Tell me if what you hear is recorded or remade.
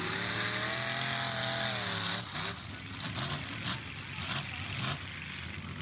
recorded